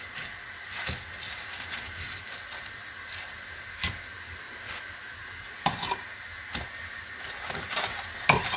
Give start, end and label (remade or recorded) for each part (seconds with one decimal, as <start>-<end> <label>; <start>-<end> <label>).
0.0-8.6 recorded